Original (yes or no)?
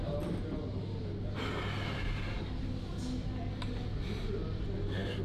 yes